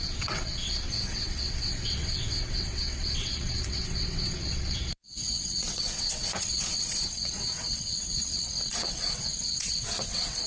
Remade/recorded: remade